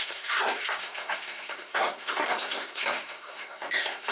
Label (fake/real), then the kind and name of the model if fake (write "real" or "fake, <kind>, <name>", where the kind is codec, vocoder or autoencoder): fake, codec, SNAC